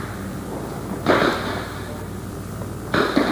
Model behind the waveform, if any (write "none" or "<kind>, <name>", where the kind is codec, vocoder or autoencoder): none